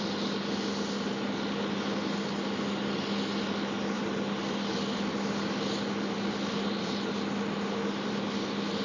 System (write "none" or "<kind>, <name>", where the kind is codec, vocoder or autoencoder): none